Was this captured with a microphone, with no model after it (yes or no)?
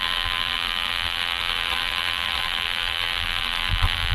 no